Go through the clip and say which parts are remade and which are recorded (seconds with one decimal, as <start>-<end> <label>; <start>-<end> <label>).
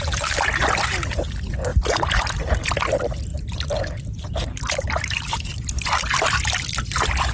0.0-1.7 recorded; 1.7-2.5 remade; 2.5-3.3 recorded; 3.3-5.5 remade; 5.5-7.3 recorded